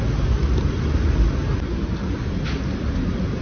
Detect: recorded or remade recorded